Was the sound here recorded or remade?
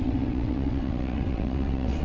remade